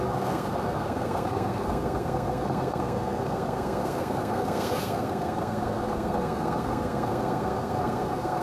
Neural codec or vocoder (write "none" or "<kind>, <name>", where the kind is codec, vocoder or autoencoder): codec, SNAC